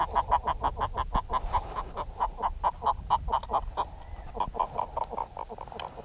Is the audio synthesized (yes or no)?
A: no